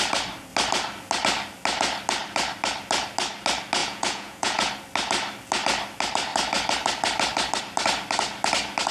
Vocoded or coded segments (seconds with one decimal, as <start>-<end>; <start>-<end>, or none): 3.8-4.7